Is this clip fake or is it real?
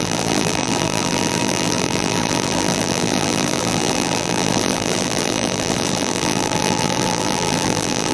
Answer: fake